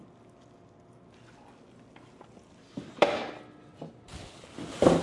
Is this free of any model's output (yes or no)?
yes